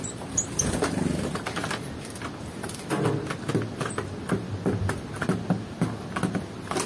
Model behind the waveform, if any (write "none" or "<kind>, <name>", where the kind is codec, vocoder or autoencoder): none